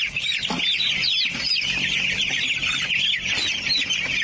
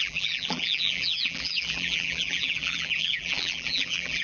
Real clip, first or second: first